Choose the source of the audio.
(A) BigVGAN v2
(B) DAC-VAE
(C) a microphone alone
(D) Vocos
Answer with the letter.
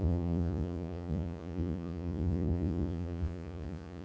D